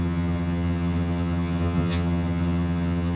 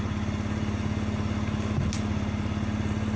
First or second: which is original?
second